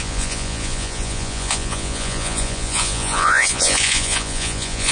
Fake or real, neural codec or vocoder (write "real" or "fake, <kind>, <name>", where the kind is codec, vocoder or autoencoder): fake, vocoder, Vocos